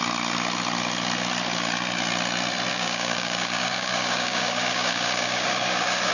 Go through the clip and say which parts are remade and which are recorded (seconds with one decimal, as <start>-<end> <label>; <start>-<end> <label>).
0.0-2.7 recorded; 2.7-6.1 remade